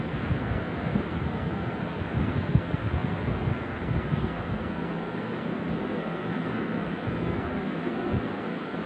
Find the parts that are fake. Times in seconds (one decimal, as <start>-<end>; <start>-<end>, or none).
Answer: 0.0-8.9